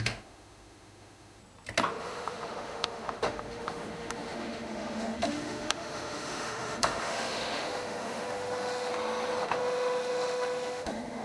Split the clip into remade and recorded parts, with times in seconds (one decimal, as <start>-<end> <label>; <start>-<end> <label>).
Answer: 0.0-1.4 remade; 1.4-2.0 recorded; 2.0-8.9 remade; 8.9-9.4 recorded; 9.4-11.2 remade